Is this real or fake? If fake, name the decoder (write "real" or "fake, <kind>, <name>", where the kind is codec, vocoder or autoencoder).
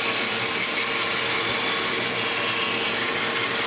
real